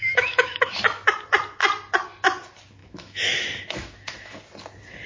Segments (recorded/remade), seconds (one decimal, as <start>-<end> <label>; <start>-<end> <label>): 0.0-0.8 remade; 0.8-2.8 recorded; 2.8-4.4 remade; 4.4-5.1 recorded